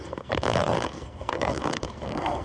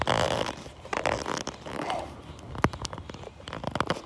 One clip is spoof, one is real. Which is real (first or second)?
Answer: second